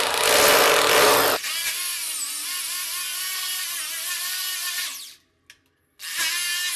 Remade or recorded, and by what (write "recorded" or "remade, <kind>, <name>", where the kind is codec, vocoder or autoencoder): recorded